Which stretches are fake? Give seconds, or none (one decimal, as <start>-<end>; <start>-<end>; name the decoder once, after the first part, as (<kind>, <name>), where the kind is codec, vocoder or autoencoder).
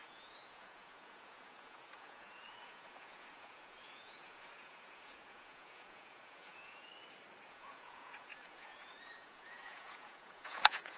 0.0-6.9 (vocoder, Vocos); 7.5-11.0